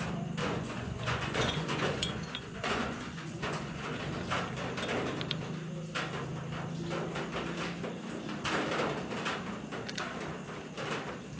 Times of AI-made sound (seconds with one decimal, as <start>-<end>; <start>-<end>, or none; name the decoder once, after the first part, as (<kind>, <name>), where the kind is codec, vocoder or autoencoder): 0.4-4.0 (vocoder, Vocos)